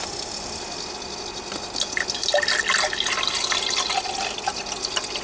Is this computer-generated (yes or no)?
no